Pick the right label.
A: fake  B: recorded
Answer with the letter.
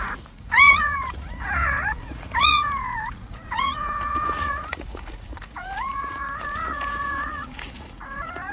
A